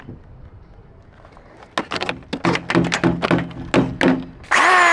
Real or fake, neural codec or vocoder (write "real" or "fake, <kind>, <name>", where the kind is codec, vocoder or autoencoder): real